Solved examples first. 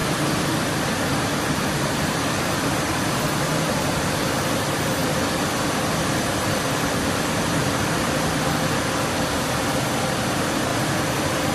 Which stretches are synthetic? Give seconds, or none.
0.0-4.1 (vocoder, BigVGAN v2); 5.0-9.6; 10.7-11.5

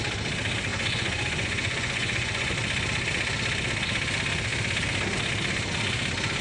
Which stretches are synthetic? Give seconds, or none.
0.7-2.5 (vocoder, Vocos)

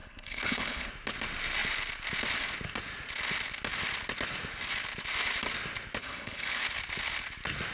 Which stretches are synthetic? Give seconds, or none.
0.0-0.9 (codec, HILCodec); 6.0-6.6